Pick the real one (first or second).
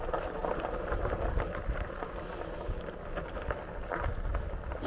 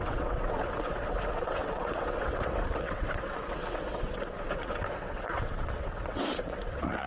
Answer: first